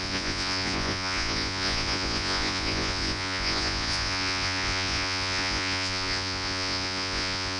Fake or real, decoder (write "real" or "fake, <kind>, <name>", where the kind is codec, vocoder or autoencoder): fake, vocoder, Vocos